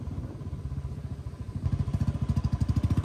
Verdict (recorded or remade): recorded